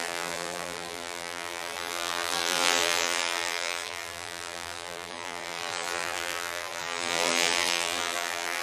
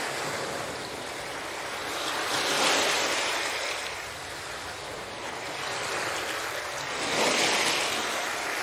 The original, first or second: second